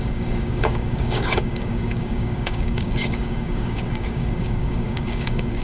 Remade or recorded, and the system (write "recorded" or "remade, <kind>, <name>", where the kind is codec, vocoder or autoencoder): remade, codec, DAC